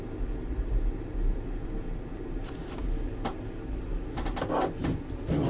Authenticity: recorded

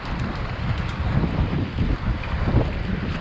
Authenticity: recorded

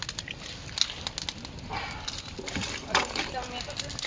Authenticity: recorded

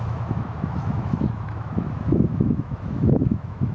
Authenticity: remade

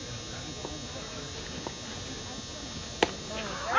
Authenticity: recorded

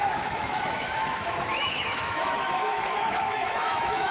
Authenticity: remade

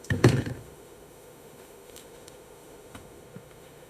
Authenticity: remade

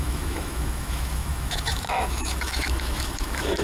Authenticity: remade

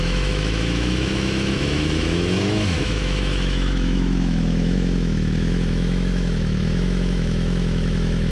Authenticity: remade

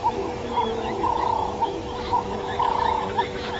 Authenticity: remade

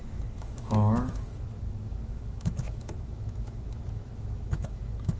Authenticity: remade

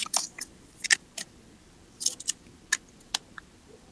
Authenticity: recorded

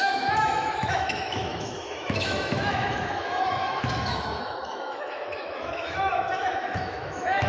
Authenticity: remade